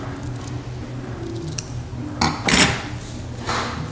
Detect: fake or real real